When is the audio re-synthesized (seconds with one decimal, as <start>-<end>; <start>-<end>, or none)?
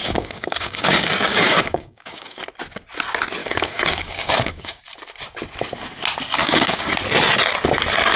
0.0-2.4; 3.4-4.8; 6.4-6.9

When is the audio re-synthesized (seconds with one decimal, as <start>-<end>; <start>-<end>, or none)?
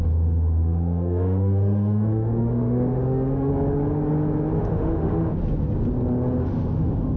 0.0-3.5; 4.6-5.4; 6.4-7.2